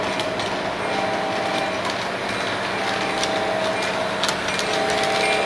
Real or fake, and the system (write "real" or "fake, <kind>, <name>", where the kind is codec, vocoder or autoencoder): real